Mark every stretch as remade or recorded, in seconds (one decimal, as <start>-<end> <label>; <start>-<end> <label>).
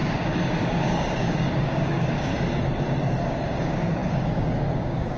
0.0-2.3 remade; 2.3-3.2 recorded; 3.2-5.2 remade